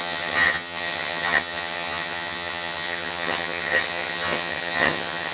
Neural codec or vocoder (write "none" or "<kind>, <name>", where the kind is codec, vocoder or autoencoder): vocoder, HiFi-GAN